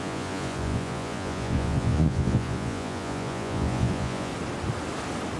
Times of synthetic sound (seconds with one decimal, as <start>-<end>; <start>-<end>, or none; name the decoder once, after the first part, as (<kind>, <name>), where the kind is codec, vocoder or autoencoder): 0.0-4.3 (vocoder, Vocos)